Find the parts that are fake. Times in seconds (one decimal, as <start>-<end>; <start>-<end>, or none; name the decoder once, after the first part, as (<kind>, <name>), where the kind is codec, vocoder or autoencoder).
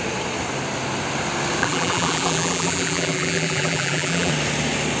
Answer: 1.6-4.3 (vocoder, BigVGAN v2)